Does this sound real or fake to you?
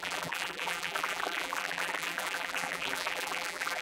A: fake